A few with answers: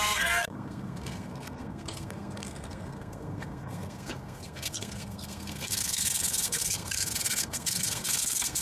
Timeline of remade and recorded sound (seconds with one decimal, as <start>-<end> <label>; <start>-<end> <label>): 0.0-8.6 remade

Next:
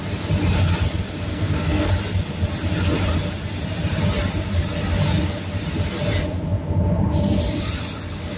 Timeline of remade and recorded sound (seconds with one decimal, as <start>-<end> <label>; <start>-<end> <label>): 0.0-1.3 recorded; 1.3-1.9 remade; 1.9-8.4 recorded

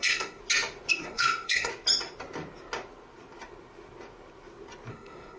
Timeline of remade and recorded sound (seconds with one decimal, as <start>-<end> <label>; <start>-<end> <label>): 0.0-0.4 remade; 0.4-0.9 recorded; 0.9-1.7 remade; 1.7-4.9 recorded; 4.9-5.4 remade

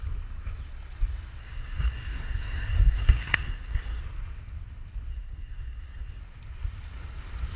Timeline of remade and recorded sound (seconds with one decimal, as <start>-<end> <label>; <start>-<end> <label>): 0.0-1.4 recorded; 1.4-4.0 remade; 4.0-5.1 recorded; 5.1-6.2 remade; 6.2-7.6 recorded

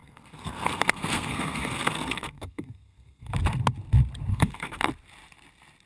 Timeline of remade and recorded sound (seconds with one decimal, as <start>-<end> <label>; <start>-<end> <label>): 0.0-3.3 remade; 3.3-4.3 recorded; 4.3-4.9 remade; 4.9-5.9 recorded